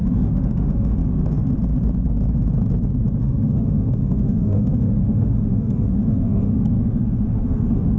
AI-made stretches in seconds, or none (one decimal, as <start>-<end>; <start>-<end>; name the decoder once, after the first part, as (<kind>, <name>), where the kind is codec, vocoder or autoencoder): 0.0-1.0 (autoencoder, DAC-VAE); 3.2-8.0